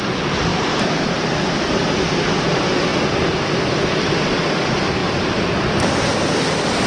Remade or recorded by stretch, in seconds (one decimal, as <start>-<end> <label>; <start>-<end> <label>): 0.0-2.9 remade; 2.9-4.5 recorded; 4.5-6.9 remade